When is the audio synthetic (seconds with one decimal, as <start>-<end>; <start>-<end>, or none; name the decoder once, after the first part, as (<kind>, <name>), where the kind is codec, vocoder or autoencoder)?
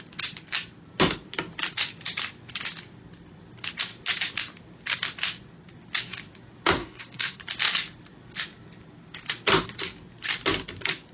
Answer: 6.8-7.4 (codec, SNAC)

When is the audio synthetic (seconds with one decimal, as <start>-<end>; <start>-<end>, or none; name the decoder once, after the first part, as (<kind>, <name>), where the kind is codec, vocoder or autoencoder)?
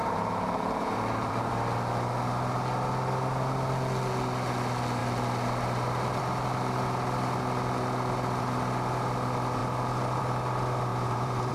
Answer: 0.0-1.5 (vocoder, BigVGAN v2); 10.9-11.5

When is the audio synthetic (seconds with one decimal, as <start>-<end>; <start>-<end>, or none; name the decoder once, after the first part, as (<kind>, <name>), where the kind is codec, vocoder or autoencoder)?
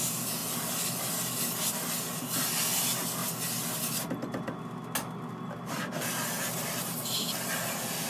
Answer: none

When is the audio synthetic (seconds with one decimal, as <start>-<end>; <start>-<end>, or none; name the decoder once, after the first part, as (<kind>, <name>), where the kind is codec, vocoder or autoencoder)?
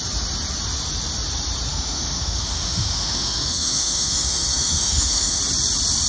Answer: 1.7-5.4 (autoencoder, DAC-VAE)